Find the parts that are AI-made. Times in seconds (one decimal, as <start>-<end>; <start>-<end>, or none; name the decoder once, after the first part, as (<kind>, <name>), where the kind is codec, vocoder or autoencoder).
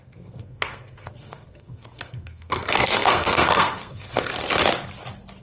0.0-4.3 (codec, SNAC)